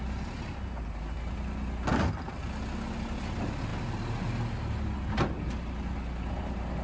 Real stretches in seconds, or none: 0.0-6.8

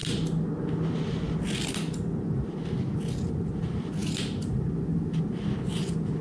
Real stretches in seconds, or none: 0.0-6.2

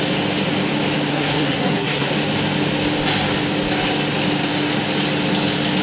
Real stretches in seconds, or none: 0.0-1.1; 2.1-5.8

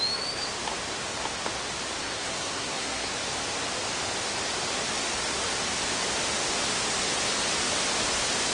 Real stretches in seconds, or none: 0.0-2.0; 3.1-8.5